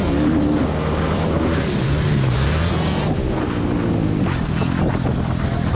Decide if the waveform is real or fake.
real